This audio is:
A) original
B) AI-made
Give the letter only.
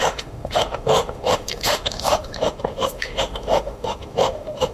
B